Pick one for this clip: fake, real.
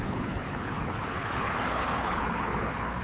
fake